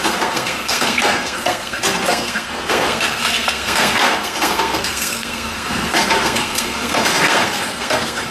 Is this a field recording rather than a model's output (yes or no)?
no